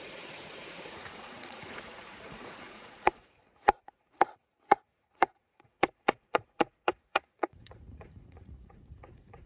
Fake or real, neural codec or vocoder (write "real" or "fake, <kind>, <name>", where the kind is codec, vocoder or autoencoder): fake, vocoder, Vocos